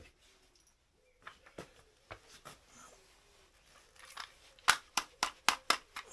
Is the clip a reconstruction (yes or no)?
no